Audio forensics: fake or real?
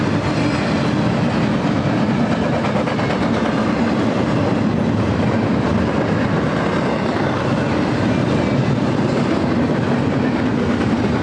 real